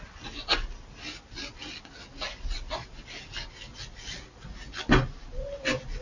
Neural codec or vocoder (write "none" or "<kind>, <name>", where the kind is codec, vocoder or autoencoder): none